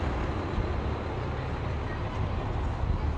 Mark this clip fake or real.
real